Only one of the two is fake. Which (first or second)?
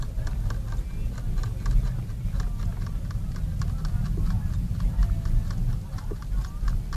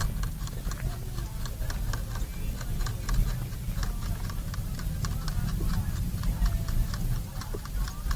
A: second